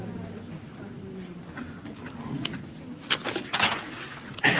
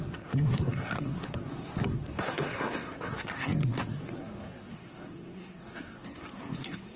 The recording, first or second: first